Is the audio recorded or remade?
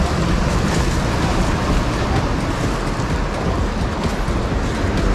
recorded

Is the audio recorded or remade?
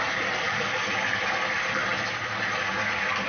recorded